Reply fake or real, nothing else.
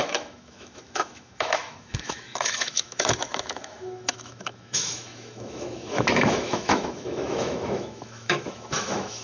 fake